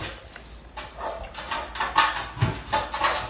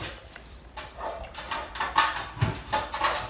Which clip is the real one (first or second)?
first